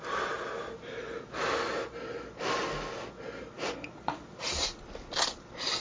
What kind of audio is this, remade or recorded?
recorded